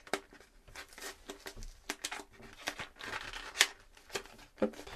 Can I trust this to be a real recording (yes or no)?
yes